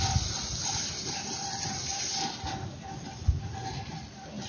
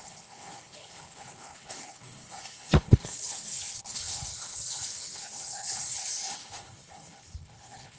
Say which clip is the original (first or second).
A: first